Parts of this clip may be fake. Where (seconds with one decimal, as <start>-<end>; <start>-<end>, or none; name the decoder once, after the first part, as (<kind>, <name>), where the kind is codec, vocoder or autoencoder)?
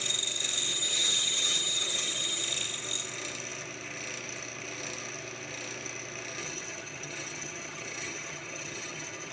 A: 0.7-2.4 (vocoder, HiFi-GAN); 6.4-9.3